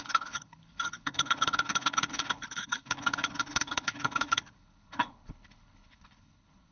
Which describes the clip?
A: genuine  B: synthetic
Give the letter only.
B